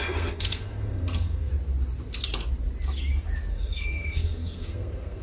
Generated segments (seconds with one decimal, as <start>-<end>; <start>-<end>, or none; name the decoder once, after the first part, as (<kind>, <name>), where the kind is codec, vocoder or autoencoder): 0.0-1.5 (codec, SNAC); 3.5-5.2